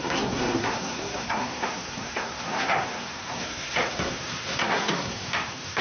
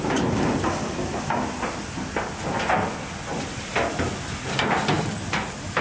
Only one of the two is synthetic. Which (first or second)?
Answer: first